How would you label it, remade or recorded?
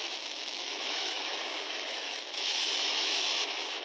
remade